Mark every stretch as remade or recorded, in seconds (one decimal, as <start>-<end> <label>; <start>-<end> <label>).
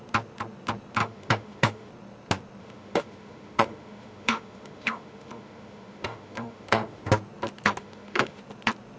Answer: 0.0-1.0 recorded; 1.0-1.9 remade; 1.9-2.6 recorded; 2.6-7.1 remade; 7.1-7.8 recorded; 7.8-8.4 remade; 8.4-9.0 recorded